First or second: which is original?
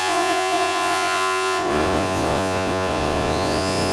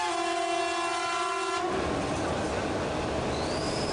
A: second